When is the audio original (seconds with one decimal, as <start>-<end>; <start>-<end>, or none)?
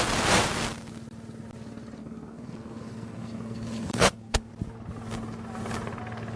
0.0-2.0; 4.5-6.4